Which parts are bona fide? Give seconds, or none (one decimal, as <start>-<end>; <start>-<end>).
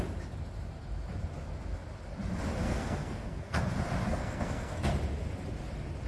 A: 0.0-2.6; 3.6-4.1; 4.9-6.1